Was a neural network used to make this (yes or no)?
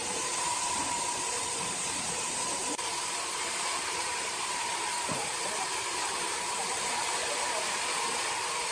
yes